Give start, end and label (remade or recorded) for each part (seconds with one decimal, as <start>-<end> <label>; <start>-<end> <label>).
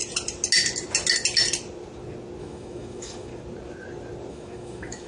0.0-2.4 recorded; 2.4-3.3 remade; 3.3-4.3 recorded; 4.3-5.1 remade